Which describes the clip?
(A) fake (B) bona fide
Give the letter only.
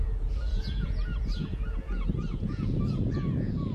A